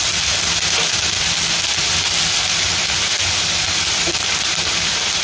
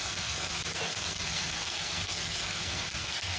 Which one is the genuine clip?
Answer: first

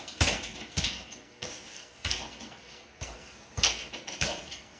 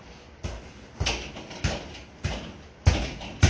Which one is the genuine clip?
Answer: second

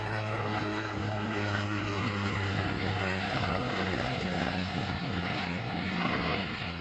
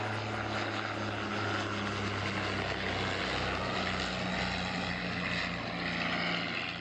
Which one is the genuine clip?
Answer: second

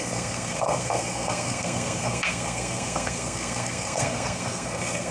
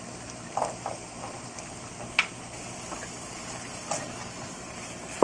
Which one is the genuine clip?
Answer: second